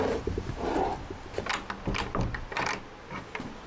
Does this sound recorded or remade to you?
recorded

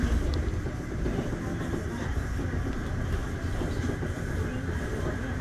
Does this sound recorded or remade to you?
recorded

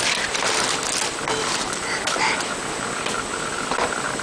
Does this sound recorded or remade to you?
recorded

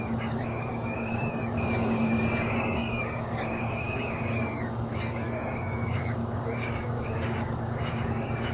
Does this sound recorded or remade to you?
remade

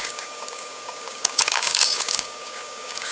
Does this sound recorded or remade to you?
remade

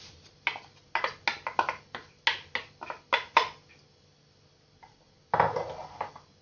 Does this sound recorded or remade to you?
recorded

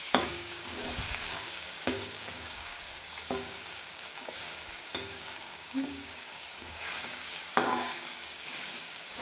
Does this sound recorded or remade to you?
remade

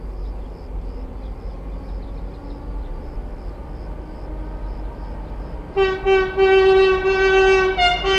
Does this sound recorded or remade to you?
recorded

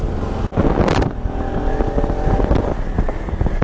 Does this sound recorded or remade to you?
recorded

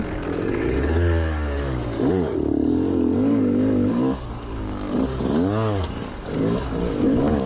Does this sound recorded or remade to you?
remade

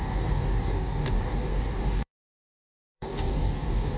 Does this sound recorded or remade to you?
remade